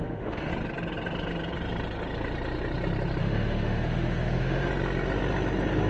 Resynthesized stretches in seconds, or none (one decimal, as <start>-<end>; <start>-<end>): 0.0-0.5; 3.2-4.7